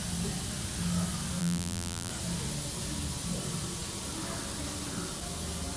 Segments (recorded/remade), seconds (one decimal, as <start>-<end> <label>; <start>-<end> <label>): 0.0-1.4 recorded; 1.4-2.1 remade; 2.1-5.8 recorded